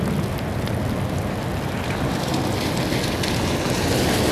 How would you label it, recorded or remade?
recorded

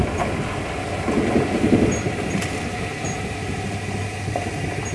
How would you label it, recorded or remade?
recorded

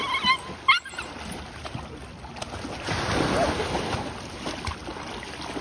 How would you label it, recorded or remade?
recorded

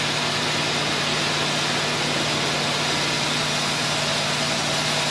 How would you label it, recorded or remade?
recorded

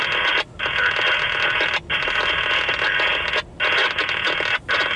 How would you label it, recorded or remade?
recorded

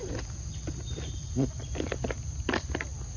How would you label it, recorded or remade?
recorded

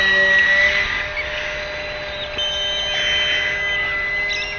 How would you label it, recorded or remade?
recorded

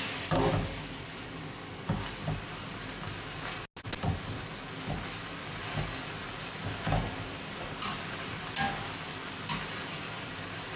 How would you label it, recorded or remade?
recorded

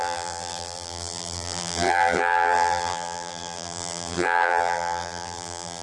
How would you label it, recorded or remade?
remade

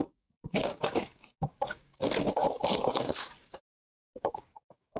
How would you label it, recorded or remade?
remade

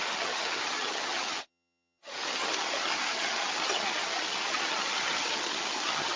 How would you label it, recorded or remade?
remade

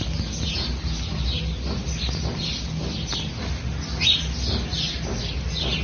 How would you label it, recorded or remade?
recorded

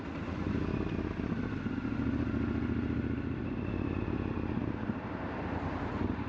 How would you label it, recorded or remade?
recorded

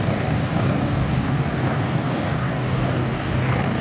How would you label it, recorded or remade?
remade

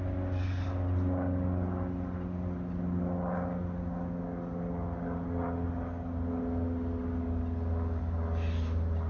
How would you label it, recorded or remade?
recorded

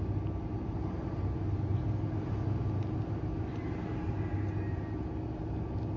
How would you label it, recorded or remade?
recorded